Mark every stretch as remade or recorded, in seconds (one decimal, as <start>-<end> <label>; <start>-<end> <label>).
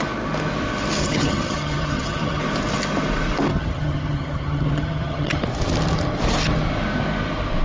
0.0-1.0 recorded; 1.0-2.4 remade; 2.4-3.5 recorded; 3.5-5.4 remade; 5.4-7.6 recorded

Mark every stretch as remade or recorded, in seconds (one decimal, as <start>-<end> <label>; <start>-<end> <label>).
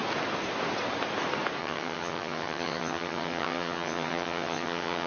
0.0-1.6 recorded; 1.6-5.1 remade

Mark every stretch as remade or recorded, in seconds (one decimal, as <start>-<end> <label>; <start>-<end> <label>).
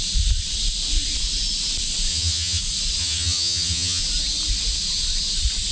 0.0-2.1 recorded; 2.1-2.6 remade; 2.6-3.0 recorded; 3.0-4.0 remade; 4.0-5.7 recorded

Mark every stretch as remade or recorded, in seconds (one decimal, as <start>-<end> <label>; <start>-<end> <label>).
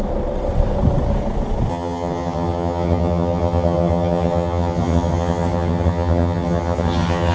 0.0-1.7 recorded; 1.7-7.3 remade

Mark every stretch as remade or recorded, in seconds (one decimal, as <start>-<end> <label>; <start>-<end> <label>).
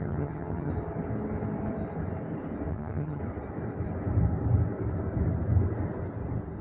0.0-0.7 remade; 0.7-2.7 recorded; 2.7-3.2 remade; 3.2-6.6 recorded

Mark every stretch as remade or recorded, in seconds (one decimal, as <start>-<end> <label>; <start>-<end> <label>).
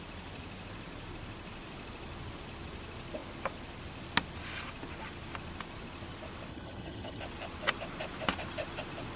0.0-6.5 recorded; 6.5-7.2 remade; 7.2-9.2 recorded